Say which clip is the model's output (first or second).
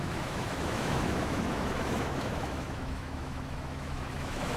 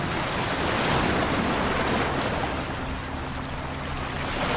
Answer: first